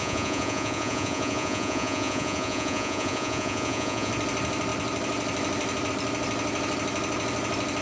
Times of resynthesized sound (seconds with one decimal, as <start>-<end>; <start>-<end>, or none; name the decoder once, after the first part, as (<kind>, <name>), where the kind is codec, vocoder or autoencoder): 0.0-4.1 (vocoder, Vocos)